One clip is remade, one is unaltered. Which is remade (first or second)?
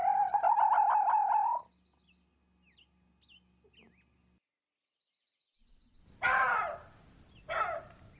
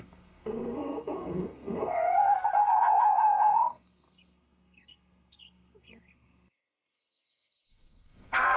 second